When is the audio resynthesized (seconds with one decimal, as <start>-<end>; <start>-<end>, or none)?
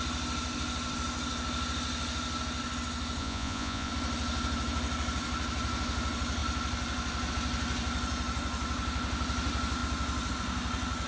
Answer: 3.2-3.9